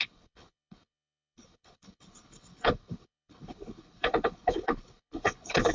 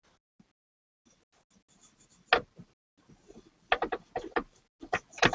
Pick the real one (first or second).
second